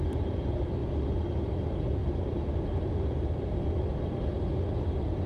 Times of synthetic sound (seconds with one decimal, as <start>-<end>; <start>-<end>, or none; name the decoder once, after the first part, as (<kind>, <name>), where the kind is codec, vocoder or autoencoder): 2.0-2.9 (vocoder, BigVGAN v2); 3.9-4.5